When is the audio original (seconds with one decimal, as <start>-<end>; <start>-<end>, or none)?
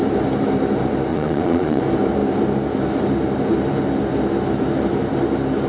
0.0-1.1; 1.8-5.7